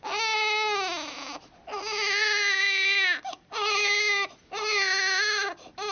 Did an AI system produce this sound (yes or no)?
no